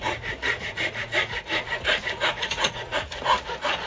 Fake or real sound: fake